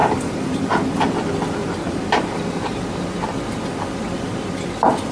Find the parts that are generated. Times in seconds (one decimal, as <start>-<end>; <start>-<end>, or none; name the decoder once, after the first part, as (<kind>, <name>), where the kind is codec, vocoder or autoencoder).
0.0-1.0 (vocoder, BigVGAN v2); 1.6-2.8